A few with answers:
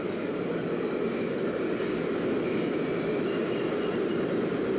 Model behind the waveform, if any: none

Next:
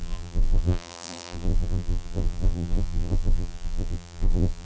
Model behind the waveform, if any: vocoder, BigVGAN v2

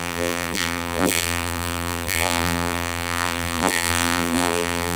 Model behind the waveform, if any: vocoder, BigVGAN v2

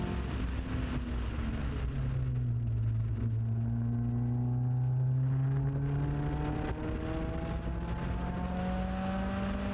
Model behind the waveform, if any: none